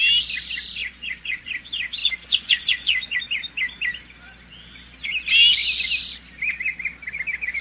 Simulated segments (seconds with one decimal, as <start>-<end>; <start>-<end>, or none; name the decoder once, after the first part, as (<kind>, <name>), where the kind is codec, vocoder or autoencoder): 0.8-1.5 (vocoder, Vocos); 2.0-3.2